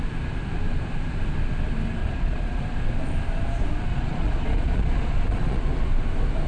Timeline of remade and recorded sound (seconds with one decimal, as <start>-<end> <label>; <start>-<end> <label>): 0.0-2.0 recorded; 2.0-2.6 remade; 2.6-3.9 recorded; 3.9-5.6 remade; 5.6-6.5 recorded

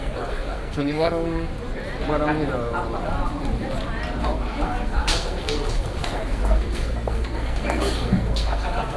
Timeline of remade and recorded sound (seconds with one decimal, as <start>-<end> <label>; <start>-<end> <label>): 0.0-1.5 remade; 1.5-4.2 recorded; 4.2-9.0 remade

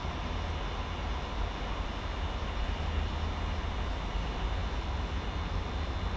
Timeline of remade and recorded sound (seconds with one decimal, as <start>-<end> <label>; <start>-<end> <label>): 0.0-6.2 recorded

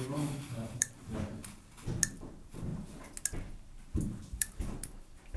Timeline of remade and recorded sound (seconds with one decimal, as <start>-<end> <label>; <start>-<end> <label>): 0.0-1.4 remade; 1.4-2.3 recorded; 2.3-2.7 remade; 2.7-3.5 recorded; 3.5-5.4 remade

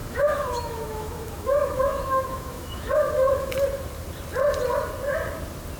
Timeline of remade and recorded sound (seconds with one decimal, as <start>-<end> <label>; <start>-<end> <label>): 0.0-3.5 remade; 3.5-5.8 recorded

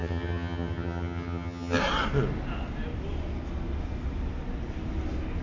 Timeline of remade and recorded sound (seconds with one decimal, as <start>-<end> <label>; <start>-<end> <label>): 0.0-1.8 remade; 1.8-5.4 recorded